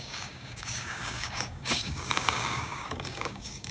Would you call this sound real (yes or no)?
no